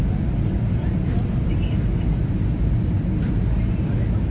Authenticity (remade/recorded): recorded